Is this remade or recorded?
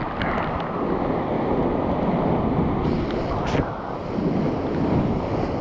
recorded